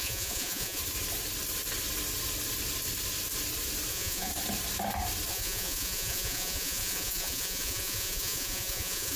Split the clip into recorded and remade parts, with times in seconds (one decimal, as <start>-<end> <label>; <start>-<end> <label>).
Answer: 0.0-0.8 remade; 0.8-3.9 recorded; 3.9-4.3 remade; 4.3-5.3 recorded; 5.3-9.2 remade

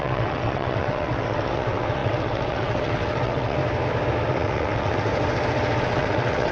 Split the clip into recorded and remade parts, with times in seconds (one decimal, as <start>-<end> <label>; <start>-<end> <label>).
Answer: 0.0-3.6 remade; 3.6-4.3 recorded; 4.3-5.1 remade; 5.1-5.8 recorded; 5.8-6.5 remade

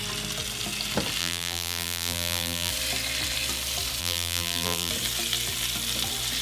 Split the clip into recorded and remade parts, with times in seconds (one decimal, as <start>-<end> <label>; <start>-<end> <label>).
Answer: 0.0-1.2 recorded; 1.2-2.7 remade; 2.7-4.0 recorded; 4.0-4.9 remade; 4.9-6.4 recorded

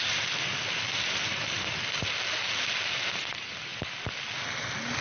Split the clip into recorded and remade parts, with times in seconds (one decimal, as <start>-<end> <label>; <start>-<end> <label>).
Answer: 0.0-0.9 recorded; 0.9-1.6 remade; 1.6-5.0 recorded

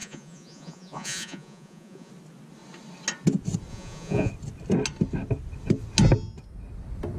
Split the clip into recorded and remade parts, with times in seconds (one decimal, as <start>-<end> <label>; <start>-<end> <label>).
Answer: 0.0-2.1 remade; 2.1-3.7 recorded; 3.7-4.3 remade; 4.3-7.2 recorded

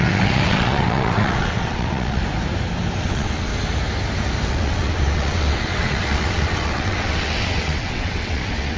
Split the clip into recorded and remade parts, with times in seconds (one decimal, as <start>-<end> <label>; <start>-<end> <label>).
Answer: 0.0-2.2 remade; 2.2-3.0 recorded; 3.0-3.5 remade; 3.5-4.5 recorded; 4.5-8.8 remade

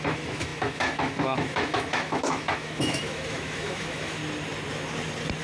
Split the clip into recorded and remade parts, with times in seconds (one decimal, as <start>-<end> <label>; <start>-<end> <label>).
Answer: 0.0-4.2 remade; 4.2-5.4 recorded

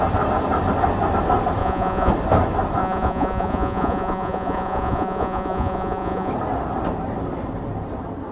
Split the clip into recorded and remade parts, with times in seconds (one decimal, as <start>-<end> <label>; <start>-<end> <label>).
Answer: 0.0-1.6 recorded; 1.6-2.1 remade; 2.1-2.8 recorded; 2.8-6.3 remade; 6.3-8.3 recorded